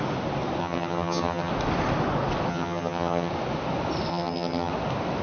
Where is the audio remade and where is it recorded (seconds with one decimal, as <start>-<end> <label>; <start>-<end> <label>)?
0.0-0.6 recorded; 0.6-1.5 remade; 1.5-2.5 recorded; 2.5-3.3 remade; 3.3-4.1 recorded; 4.1-4.7 remade; 4.7-5.2 recorded